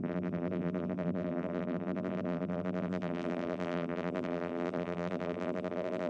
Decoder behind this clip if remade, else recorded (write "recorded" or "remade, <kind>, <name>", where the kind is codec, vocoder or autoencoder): remade, vocoder, BigVGAN v2